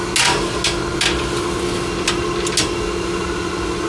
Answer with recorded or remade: recorded